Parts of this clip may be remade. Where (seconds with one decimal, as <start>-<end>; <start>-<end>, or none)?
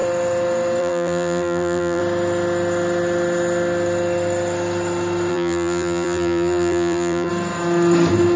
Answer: 0.8-2.0; 5.3-7.3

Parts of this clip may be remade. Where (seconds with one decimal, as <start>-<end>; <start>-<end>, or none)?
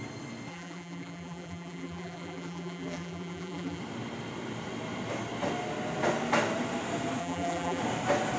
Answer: 0.5-3.8; 7.2-7.8